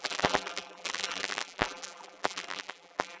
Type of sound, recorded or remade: remade